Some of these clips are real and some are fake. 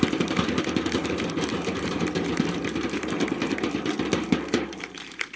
fake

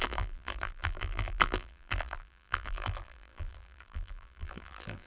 fake